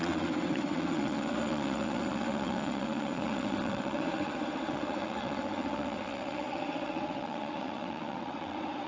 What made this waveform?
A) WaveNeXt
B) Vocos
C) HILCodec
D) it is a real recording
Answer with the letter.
A